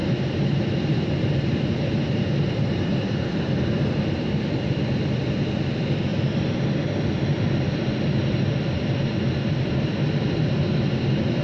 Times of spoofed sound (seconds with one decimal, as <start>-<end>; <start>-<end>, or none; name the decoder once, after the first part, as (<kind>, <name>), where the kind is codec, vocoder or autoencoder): 0.0-4.5 (vocoder, BigVGAN v2)